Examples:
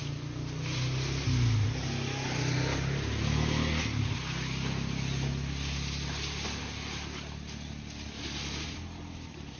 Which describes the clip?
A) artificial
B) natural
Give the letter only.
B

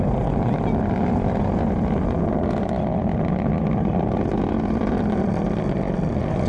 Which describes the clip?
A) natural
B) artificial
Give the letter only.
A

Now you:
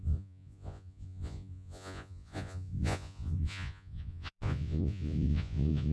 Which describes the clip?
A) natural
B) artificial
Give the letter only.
B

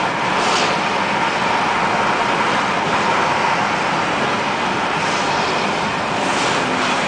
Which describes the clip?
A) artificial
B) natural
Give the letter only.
B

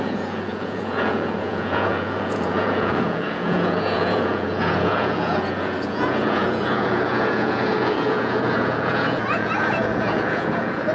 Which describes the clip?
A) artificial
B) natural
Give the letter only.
A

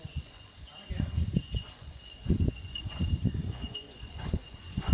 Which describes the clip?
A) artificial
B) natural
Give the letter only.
A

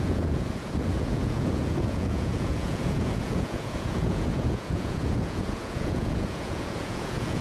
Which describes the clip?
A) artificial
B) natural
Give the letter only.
A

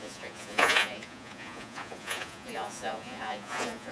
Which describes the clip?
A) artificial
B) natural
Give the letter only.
A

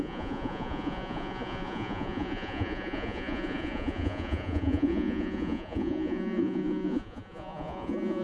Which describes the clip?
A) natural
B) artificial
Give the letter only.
B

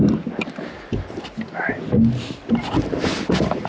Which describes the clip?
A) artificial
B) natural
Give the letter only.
B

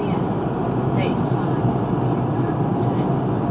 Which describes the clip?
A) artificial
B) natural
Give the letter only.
B